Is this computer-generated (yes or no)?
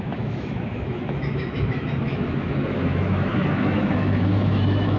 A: yes